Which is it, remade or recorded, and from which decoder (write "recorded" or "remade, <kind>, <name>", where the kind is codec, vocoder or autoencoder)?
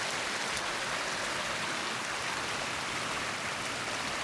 recorded